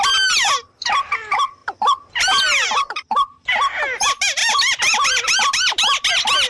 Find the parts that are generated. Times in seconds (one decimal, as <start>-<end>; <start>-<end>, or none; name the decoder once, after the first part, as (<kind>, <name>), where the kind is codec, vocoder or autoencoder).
1.6-3.1 (vocoder, BigVGAN v2); 4.4-6.1